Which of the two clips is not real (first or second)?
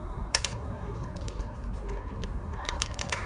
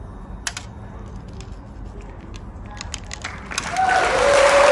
first